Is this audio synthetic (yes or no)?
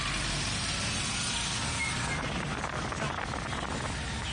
no